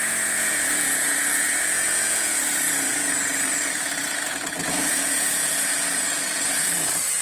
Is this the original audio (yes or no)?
no